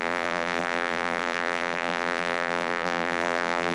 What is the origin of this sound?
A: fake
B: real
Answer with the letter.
A